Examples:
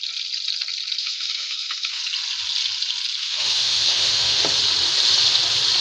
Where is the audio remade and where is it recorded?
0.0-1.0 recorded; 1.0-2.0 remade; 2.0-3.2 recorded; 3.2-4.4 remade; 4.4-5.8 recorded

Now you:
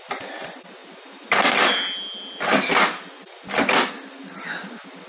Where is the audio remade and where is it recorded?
0.0-5.1 recorded

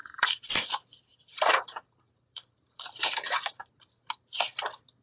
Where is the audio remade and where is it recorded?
0.0-0.7 remade; 0.7-1.1 recorded; 1.1-4.1 remade; 4.1-5.0 recorded

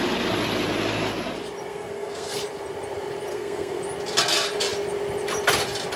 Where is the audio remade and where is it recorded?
0.0-1.7 recorded; 1.7-2.4 remade; 2.4-3.3 recorded; 3.3-3.8 remade; 3.8-6.0 recorded

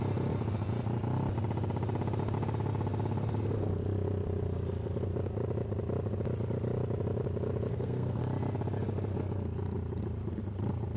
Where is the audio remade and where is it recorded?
0.0-7.7 recorded; 7.7-8.2 remade; 8.2-11.0 recorded